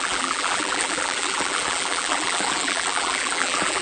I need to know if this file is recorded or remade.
remade